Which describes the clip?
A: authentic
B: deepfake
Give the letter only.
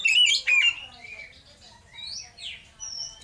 A